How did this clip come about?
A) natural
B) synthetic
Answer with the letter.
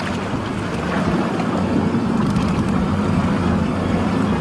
A